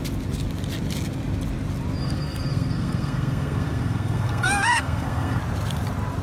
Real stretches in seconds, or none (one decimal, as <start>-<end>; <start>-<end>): 0.0-2.0; 5.4-6.2